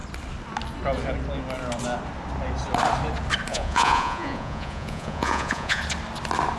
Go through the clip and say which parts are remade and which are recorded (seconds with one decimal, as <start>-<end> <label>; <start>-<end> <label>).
0.0-3.5 recorded; 3.5-5.8 remade; 5.8-6.6 recorded

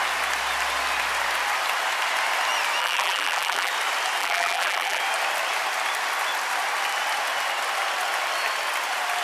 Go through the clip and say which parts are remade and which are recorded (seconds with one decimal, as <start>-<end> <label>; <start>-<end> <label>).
0.0-2.8 recorded; 2.8-3.7 remade; 3.7-4.2 recorded; 4.2-5.0 remade; 5.0-9.2 recorded

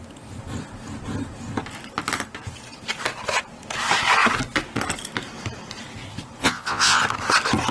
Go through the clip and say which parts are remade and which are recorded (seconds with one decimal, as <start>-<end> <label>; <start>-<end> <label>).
0.0-6.4 recorded; 6.4-7.0 remade; 7.0-7.7 recorded

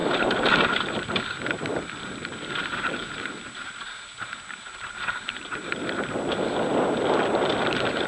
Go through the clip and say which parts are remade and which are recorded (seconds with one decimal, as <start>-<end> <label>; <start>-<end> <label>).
0.0-1.2 remade; 1.2-8.1 recorded

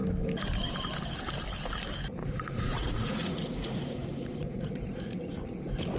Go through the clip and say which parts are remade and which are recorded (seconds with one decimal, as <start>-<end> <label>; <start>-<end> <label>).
0.0-2.2 recorded; 2.2-5.3 remade; 5.3-6.0 recorded

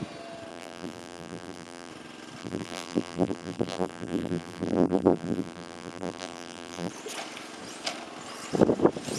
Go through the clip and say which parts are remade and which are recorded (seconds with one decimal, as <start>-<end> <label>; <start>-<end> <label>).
0.0-0.5 recorded; 0.5-1.9 remade; 1.9-2.4 recorded; 2.4-6.9 remade; 6.9-9.2 recorded

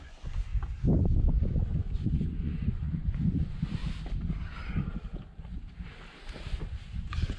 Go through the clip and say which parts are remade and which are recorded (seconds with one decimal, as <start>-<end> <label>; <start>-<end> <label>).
0.0-0.5 remade; 0.5-1.0 recorded; 1.0-3.8 remade; 3.8-6.6 recorded; 6.6-7.4 remade